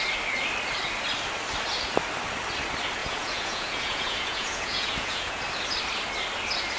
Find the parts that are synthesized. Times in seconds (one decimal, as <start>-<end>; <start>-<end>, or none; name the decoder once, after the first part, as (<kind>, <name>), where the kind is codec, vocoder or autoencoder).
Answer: 3.0-5.4 (vocoder, Vocos)